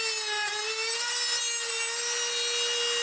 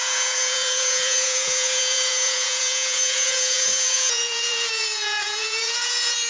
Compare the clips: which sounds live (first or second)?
first